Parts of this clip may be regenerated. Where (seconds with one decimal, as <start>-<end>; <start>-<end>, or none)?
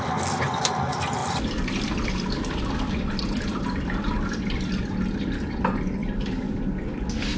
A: 1.2-5.6; 6.0-6.6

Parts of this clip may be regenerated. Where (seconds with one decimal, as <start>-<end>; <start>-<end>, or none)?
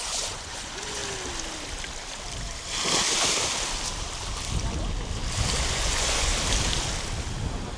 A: 0.0-1.0; 5.7-6.3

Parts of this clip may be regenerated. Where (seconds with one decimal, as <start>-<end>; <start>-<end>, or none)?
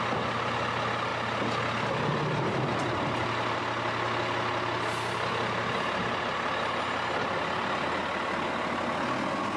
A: none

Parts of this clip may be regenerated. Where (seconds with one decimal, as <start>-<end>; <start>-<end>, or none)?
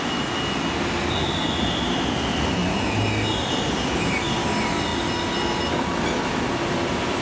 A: none